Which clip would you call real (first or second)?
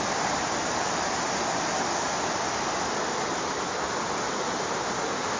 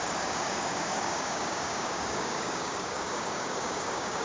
first